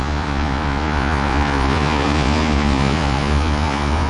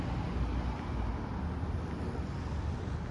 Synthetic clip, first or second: first